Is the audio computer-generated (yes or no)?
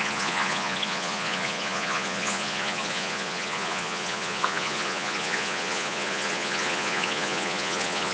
yes